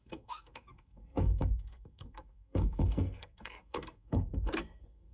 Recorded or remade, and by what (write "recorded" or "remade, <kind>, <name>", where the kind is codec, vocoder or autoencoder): remade, codec, SNAC